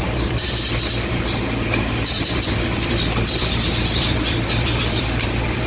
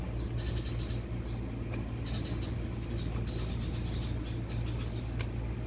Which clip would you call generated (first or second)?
first